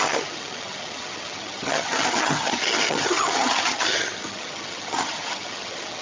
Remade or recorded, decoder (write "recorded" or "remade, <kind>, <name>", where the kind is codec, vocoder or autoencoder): remade, vocoder, HiFi-GAN